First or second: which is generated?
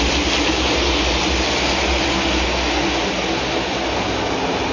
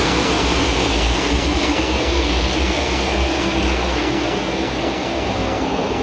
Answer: second